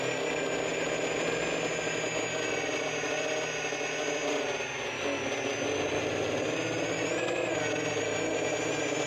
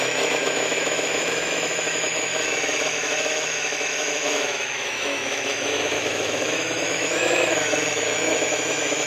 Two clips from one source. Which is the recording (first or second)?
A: first